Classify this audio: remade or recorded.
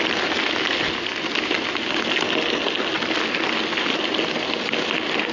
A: recorded